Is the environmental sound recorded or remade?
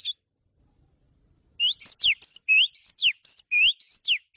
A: recorded